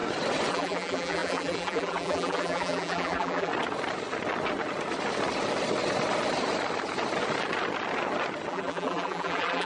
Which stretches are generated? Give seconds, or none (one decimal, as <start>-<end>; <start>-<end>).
0.5-3.5; 8.5-9.7